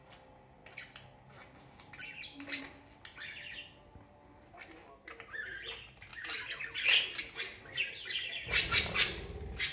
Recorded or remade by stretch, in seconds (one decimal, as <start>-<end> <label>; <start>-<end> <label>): 0.0-9.7 recorded